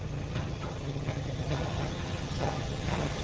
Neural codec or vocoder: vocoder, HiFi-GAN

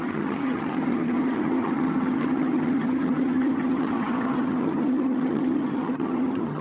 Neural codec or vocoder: vocoder, HiFi-GAN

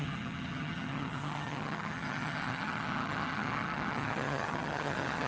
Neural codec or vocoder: vocoder, HiFi-GAN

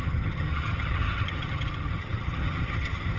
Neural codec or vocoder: vocoder, HiFi-GAN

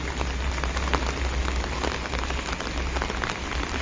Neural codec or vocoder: none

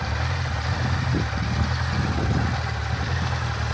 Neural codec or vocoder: none